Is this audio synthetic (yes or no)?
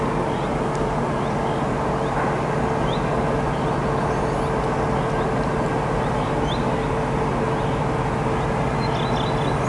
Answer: no